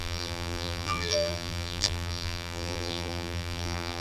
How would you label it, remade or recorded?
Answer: remade